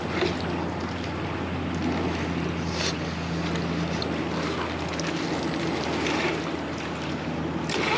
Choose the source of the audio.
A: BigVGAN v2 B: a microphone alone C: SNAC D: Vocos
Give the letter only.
B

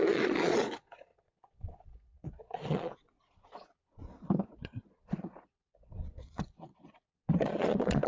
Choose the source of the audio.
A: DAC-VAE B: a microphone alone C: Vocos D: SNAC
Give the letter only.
C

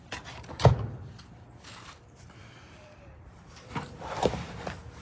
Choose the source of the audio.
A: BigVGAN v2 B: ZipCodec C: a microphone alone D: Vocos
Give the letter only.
A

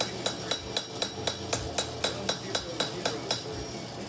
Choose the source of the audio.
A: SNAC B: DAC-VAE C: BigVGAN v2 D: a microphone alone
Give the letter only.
D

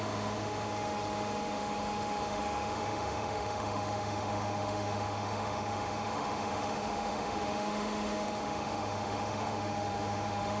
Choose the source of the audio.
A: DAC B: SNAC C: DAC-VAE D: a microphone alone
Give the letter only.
C